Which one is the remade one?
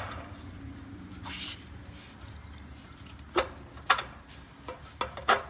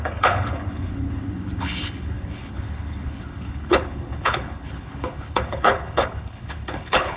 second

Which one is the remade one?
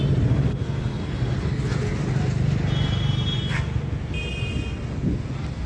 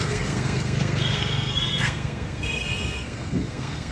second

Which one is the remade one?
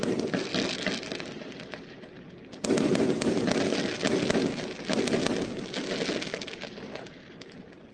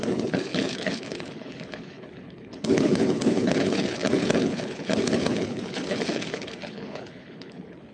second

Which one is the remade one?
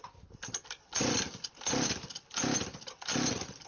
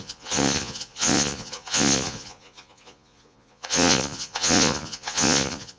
second